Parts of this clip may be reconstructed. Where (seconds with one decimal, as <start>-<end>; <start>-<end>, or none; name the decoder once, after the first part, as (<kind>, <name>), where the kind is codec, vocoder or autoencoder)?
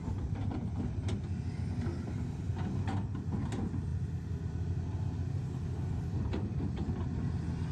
none